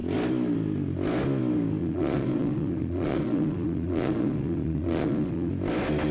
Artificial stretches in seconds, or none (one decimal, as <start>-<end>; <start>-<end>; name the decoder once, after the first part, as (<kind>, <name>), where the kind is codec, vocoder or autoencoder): 1.8-5.5 (vocoder, Vocos)